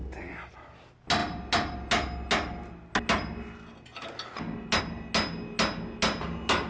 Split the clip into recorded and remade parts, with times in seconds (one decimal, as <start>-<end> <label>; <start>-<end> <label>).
0.0-6.7 recorded